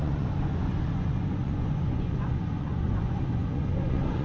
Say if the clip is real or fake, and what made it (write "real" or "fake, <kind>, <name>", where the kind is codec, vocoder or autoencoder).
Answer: fake, vocoder, Vocos